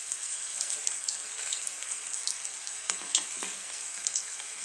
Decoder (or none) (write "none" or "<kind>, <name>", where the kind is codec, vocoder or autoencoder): codec, SNAC